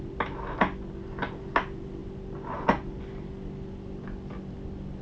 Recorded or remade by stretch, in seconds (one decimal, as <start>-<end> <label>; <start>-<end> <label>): 0.0-5.0 recorded